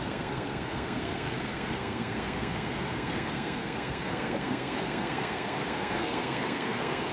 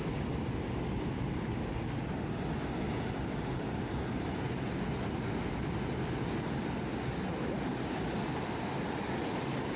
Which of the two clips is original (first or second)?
second